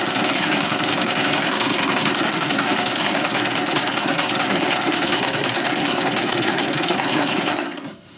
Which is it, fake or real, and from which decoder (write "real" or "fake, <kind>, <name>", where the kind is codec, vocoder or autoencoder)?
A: fake, codec, SNAC